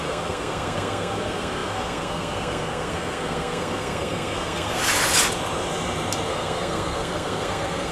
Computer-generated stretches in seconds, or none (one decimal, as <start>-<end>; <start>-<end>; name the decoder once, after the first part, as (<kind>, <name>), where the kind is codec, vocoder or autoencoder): 0.0-4.8 (codec, SNAC); 6.3-7.9